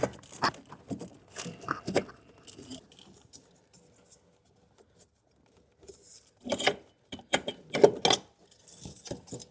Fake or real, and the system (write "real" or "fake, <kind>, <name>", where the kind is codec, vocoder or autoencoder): real